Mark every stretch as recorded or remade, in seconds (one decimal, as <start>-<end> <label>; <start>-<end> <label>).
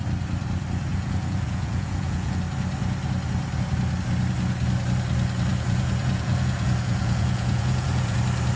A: 0.0-0.9 recorded; 0.9-2.4 remade; 2.4-5.5 recorded; 5.5-8.2 remade; 8.2-8.6 recorded